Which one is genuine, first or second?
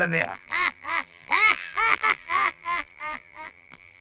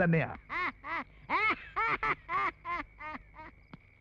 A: second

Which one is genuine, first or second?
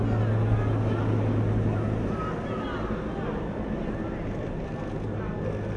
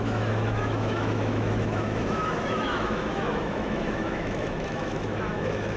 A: first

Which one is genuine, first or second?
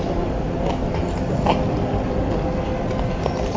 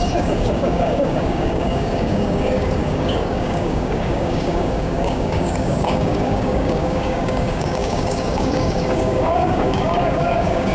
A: first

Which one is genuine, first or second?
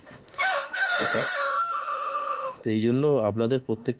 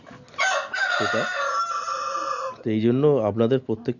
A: second